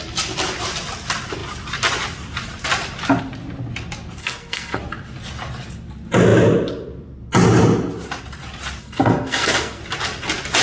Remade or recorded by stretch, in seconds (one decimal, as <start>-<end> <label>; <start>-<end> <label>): 0.0-4.2 recorded; 4.2-4.8 remade; 4.8-8.8 recorded; 8.8-9.8 remade; 9.8-10.6 recorded